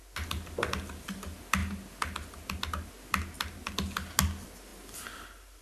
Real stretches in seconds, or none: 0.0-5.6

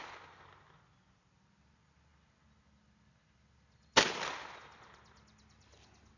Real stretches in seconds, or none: 0.0-6.2

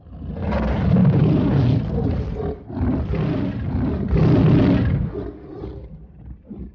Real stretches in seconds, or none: 0.0-1.0; 1.6-5.5

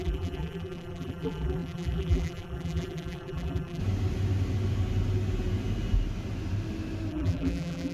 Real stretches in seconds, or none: 3.8-7.1

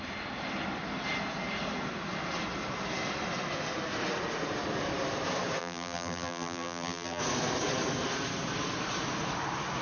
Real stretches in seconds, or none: 0.0-5.6; 7.2-9.8

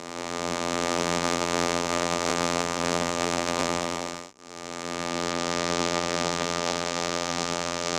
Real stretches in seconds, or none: none

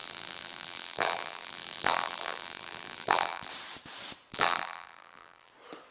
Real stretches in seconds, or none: 3.5-4.3; 5.5-5.9

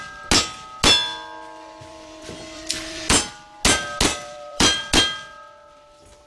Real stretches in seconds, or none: 0.0-1.9; 3.1-4.1; 4.8-6.3